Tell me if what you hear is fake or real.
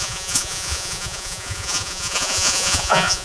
fake